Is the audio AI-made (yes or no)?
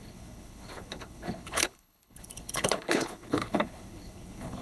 yes